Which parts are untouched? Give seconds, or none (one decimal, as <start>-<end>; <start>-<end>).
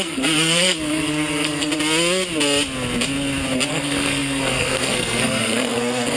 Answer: 1.7-3.7